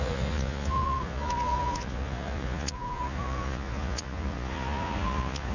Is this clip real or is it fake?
fake